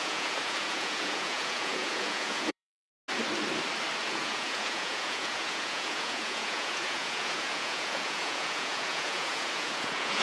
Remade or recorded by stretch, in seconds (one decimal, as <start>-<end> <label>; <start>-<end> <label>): 0.0-2.9 remade; 2.9-4.1 recorded; 4.1-10.2 remade